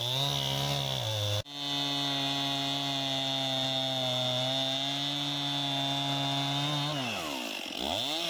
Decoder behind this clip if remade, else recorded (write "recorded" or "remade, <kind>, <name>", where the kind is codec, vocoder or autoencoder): recorded